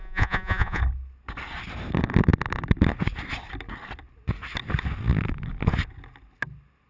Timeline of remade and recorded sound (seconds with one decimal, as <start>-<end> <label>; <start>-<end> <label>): 0.0-0.8 remade; 0.8-6.9 recorded